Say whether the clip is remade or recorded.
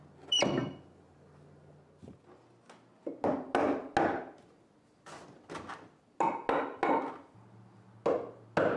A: recorded